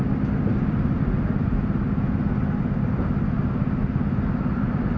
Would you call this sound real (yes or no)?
yes